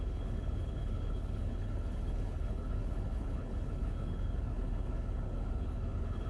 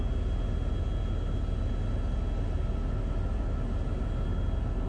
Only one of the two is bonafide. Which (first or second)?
second